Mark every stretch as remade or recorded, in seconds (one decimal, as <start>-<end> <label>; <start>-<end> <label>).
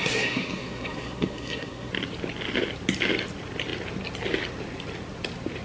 0.0-1.9 remade; 1.9-5.6 recorded